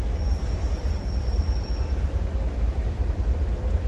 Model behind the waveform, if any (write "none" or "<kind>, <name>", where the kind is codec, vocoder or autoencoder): none